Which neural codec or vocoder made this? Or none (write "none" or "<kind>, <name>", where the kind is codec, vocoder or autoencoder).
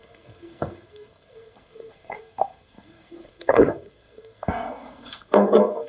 codec, SNAC